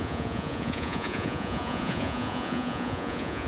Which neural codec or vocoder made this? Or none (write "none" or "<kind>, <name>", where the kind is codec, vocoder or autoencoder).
vocoder, Vocos